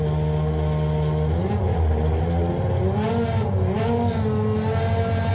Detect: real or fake real